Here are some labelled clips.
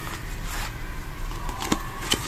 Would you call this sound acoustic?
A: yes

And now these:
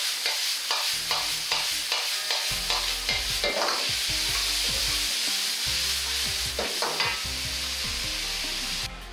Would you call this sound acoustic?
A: yes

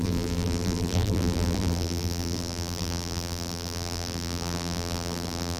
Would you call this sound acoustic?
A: no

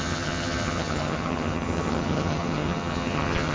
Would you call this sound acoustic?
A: no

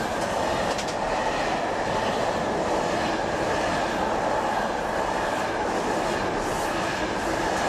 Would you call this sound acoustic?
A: yes